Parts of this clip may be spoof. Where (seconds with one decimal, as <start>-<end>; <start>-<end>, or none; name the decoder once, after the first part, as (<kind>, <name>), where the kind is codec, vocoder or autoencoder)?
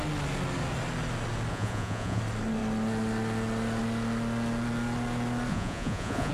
1.5-2.2 (vocoder, Vocos); 5.5-6.3